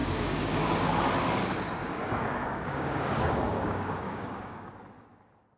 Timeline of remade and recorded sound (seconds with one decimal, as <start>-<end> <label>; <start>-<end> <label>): 0.0-1.0 remade; 1.0-1.8 recorded; 1.8-4.7 remade; 4.7-5.6 recorded